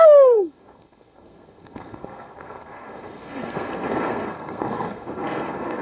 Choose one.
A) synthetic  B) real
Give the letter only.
A